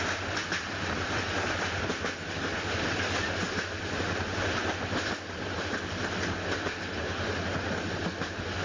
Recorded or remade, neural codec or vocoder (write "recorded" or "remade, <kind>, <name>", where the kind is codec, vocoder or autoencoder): recorded